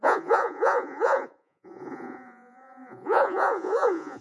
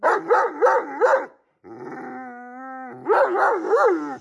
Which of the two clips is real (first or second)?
second